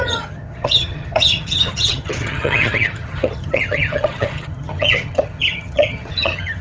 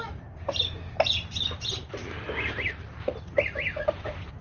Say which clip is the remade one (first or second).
first